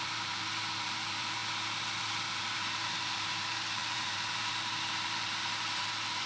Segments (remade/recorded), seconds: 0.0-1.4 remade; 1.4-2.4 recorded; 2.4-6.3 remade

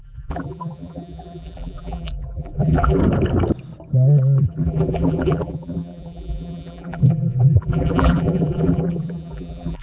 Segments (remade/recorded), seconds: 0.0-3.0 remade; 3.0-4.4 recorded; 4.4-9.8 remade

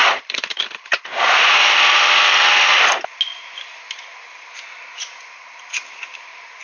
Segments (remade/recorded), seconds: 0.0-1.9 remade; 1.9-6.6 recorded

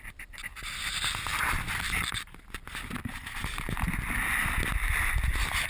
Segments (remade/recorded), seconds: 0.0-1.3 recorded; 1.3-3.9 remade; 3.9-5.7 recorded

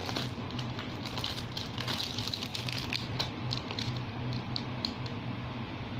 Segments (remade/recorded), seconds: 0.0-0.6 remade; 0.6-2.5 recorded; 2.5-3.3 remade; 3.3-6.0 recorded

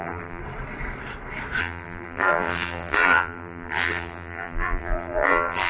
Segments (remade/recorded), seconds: 0.0-0.4 remade; 0.4-1.6 recorded; 1.6-5.7 remade

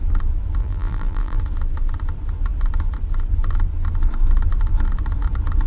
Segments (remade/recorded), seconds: 0.0-0.6 recorded; 0.6-1.4 remade; 1.4-5.7 recorded